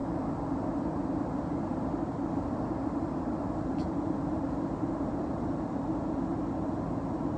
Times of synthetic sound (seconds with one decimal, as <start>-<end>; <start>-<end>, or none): 1.7-5.9